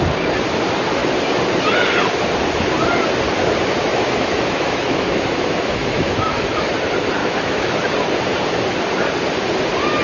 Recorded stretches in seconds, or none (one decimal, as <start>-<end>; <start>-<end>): 0.0-3.9; 6.7-7.2; 7.8-10.0